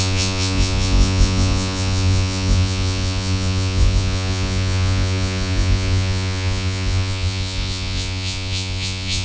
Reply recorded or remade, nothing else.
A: remade